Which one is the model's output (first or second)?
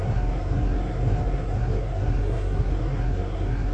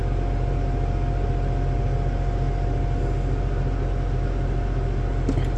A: first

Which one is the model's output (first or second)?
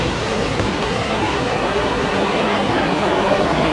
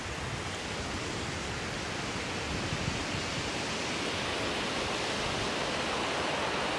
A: first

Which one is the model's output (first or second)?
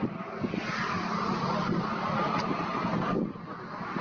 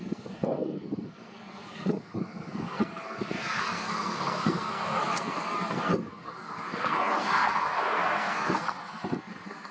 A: second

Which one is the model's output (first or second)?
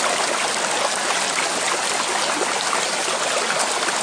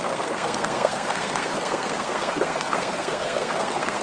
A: second